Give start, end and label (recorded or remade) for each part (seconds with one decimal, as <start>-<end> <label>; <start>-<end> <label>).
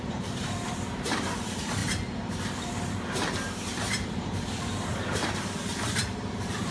0.0-1.8 remade; 1.8-3.9 recorded; 3.9-6.7 remade